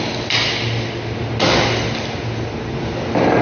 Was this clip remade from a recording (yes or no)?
no